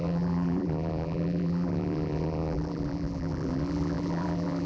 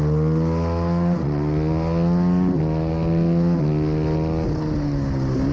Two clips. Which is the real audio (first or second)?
second